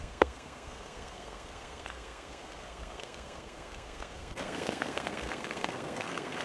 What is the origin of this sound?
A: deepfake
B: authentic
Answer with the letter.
A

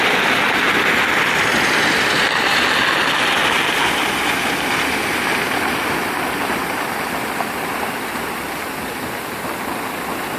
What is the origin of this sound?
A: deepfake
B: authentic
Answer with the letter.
B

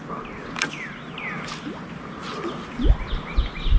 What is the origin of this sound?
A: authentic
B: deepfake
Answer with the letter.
A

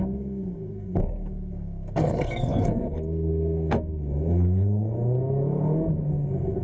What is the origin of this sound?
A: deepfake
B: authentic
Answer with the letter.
A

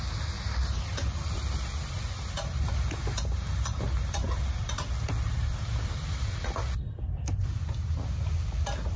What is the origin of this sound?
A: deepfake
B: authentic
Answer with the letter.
B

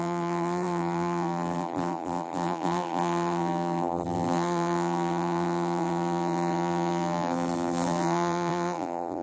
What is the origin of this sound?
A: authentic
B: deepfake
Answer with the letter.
B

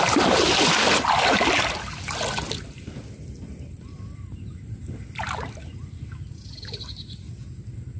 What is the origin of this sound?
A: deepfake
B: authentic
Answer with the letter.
B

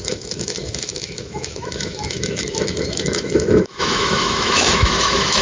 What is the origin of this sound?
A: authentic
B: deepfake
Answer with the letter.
B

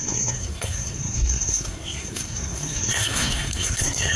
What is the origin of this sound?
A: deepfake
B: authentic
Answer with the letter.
A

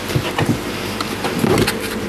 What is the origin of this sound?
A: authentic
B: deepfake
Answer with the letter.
B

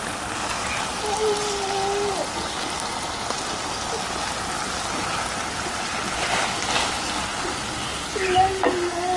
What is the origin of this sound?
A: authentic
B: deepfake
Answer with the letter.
A